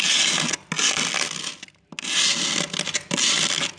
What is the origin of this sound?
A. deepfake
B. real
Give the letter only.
B